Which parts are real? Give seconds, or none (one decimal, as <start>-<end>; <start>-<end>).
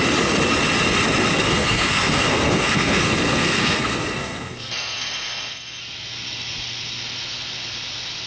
0.0-1.4; 5.8-8.3